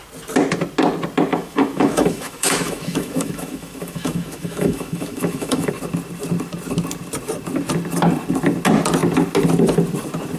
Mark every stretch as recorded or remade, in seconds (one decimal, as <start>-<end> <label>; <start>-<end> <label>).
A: 0.0-1.3 recorded; 1.3-5.7 remade; 5.7-10.4 recorded

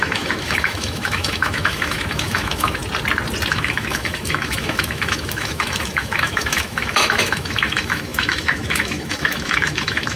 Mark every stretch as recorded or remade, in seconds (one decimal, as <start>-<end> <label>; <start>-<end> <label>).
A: 0.0-2.8 remade; 2.8-3.5 recorded; 3.5-10.2 remade

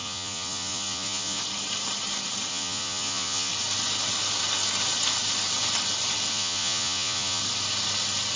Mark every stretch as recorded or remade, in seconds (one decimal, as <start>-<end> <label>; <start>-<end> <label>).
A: 0.0-1.4 remade; 1.4-2.5 recorded; 2.5-3.5 remade; 3.5-6.3 recorded; 6.3-7.4 remade; 7.4-8.4 recorded

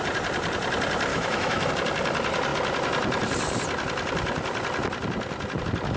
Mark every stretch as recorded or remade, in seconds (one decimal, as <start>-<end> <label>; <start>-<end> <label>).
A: 0.0-1.1 recorded; 1.1-1.7 remade; 1.7-6.0 recorded